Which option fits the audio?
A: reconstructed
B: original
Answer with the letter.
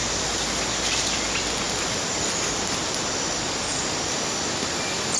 B